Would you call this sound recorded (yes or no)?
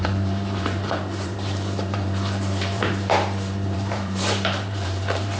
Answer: no